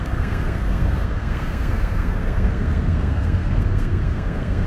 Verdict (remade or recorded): remade